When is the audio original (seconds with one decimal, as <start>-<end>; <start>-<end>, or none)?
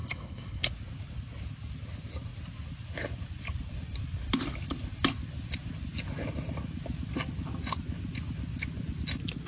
0.7-9.5